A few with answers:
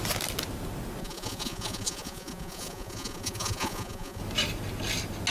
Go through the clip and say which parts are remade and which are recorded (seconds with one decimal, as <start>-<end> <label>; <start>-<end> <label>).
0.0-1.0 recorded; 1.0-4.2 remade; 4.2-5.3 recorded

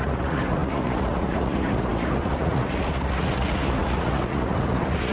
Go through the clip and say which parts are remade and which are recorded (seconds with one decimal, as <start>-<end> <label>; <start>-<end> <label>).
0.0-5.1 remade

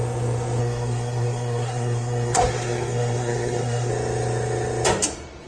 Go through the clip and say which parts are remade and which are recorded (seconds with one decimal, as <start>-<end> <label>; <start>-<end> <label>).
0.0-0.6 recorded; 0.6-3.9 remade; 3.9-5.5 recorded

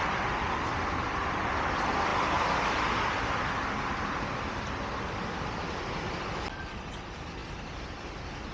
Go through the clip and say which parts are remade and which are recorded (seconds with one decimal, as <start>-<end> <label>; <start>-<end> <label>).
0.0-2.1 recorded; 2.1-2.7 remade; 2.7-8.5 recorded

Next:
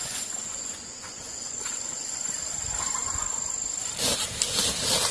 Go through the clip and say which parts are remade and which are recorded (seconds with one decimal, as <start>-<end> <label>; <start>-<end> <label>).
0.0-2.3 remade; 2.3-5.1 recorded

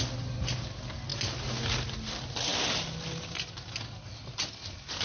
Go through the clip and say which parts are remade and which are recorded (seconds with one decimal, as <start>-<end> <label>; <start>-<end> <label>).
0.0-5.0 recorded